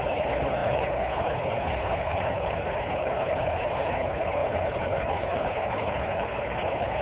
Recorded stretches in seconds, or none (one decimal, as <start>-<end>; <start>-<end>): none